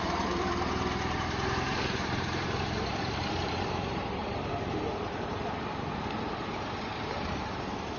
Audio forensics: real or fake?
fake